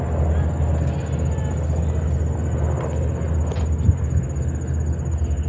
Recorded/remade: recorded